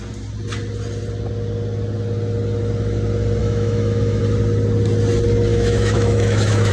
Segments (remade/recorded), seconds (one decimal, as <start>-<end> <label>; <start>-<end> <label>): 0.0-3.4 recorded; 3.4-4.2 remade; 4.2-5.5 recorded; 5.5-6.7 remade